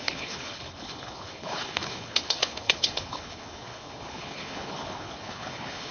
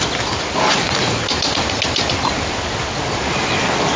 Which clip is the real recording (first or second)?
second